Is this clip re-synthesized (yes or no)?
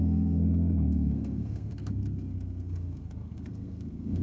yes